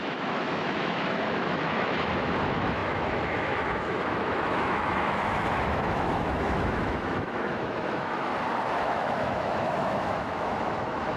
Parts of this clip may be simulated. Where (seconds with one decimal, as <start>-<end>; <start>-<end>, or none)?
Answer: 0.0-8.3; 8.8-11.2